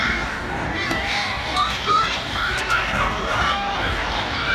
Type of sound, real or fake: fake